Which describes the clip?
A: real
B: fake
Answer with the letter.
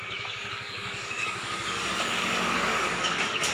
B